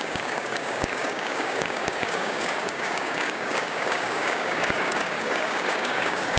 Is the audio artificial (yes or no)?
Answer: yes